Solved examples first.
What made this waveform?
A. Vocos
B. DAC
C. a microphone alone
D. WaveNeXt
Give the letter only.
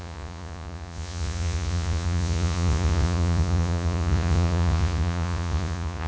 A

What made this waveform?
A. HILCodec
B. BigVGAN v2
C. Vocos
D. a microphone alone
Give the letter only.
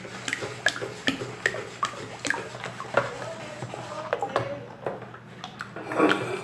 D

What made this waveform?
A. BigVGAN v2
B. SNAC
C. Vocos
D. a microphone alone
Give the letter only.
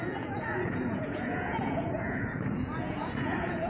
C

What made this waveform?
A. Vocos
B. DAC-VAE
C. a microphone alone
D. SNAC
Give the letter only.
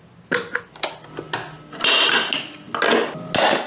C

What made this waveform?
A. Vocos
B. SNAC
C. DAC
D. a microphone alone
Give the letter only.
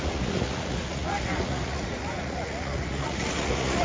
A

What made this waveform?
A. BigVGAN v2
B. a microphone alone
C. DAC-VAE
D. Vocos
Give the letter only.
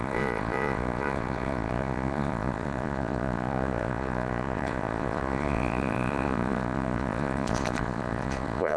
D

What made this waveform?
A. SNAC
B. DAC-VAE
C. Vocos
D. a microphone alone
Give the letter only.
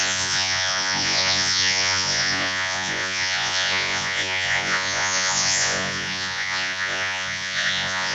C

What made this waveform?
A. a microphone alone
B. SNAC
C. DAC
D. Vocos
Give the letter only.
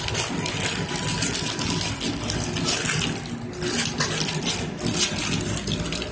A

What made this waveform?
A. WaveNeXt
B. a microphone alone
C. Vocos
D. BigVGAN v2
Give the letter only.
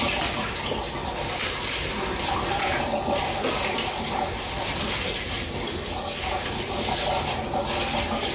B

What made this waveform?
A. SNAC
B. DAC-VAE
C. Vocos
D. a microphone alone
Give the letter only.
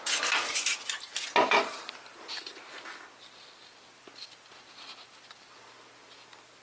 D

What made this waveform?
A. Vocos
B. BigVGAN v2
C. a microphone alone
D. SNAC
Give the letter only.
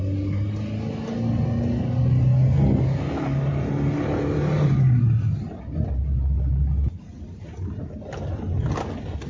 C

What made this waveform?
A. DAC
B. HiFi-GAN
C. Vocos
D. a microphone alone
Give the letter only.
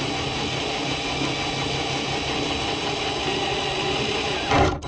D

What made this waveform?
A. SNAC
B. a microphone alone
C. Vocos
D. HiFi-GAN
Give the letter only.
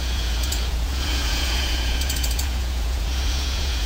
C